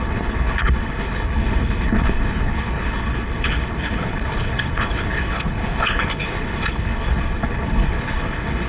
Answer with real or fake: fake